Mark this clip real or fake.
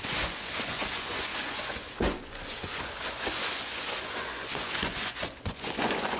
fake